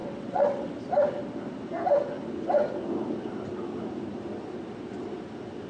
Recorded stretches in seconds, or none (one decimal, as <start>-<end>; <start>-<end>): 0.7-5.7